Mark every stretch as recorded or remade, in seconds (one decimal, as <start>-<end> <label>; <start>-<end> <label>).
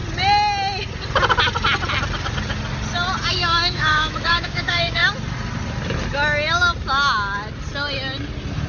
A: 0.0-3.3 recorded; 3.3-5.0 remade; 5.0-8.7 recorded